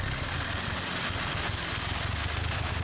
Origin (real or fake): real